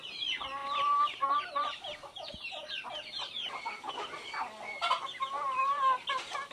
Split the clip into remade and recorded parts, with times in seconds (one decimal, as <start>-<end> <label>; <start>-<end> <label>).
0.0-0.6 recorded; 0.6-3.9 remade; 3.9-6.5 recorded